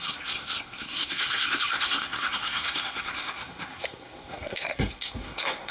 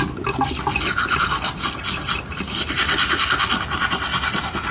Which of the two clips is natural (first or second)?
second